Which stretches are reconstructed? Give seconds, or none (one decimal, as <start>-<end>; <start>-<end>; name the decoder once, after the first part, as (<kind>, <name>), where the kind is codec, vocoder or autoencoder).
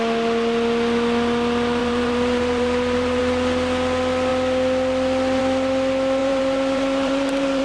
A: 1.8-3.2 (vocoder, BigVGAN v2); 6.2-7.6